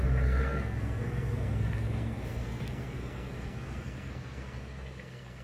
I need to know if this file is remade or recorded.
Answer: remade